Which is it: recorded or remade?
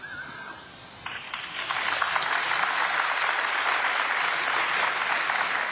recorded